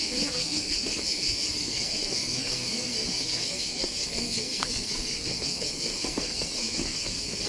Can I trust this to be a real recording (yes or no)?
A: no